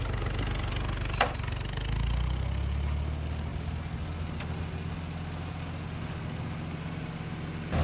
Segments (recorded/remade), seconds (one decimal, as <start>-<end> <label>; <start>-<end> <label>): 0.0-7.8 recorded